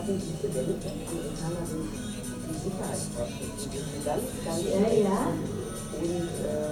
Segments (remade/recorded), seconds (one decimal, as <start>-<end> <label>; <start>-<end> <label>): 0.0-0.4 recorded; 0.4-1.0 remade; 1.0-6.7 recorded